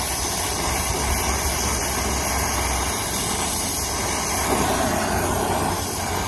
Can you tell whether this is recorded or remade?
recorded